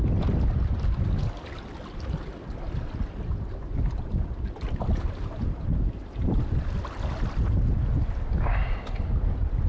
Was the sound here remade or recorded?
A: recorded